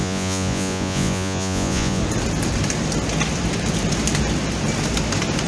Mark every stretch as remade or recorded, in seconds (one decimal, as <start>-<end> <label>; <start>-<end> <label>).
0.0-2.0 remade; 2.0-5.5 recorded